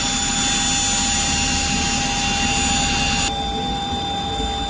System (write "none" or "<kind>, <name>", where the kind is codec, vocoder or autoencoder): none